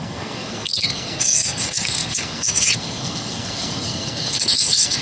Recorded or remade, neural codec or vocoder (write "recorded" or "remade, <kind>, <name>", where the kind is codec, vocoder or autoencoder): remade, codec, SNAC